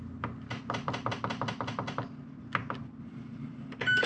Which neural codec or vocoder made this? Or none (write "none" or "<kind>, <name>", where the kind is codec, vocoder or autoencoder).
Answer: none